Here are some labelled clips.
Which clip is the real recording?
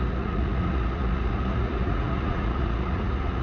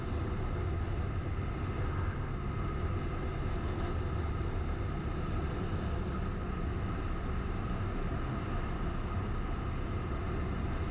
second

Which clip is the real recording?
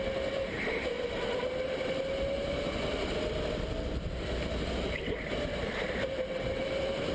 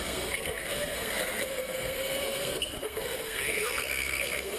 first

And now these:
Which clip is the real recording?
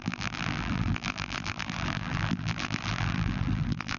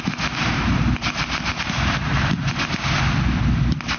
second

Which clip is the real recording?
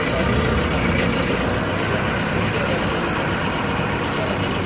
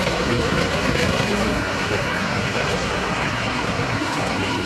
first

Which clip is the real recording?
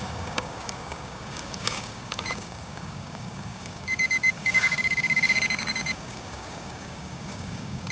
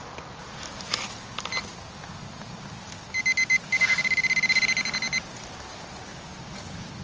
second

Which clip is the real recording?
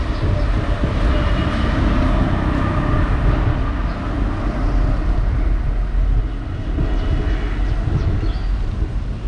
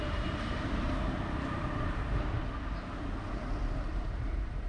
first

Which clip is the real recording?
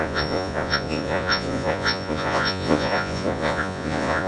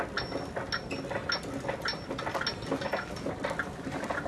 second